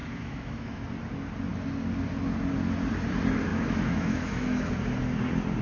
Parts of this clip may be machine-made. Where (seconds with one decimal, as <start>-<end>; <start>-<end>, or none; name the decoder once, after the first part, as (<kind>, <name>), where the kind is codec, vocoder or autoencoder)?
0.0-0.8 (autoencoder, DAC-VAE); 3.5-4.7